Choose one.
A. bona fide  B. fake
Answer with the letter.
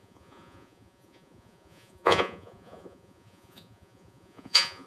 B